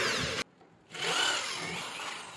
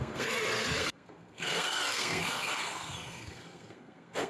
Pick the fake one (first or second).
second